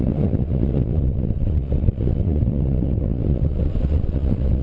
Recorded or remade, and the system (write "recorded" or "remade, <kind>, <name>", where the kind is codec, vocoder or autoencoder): remade, vocoder, WaveNeXt